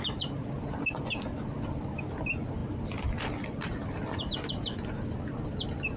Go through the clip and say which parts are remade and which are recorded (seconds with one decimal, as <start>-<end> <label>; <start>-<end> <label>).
0.0-6.0 recorded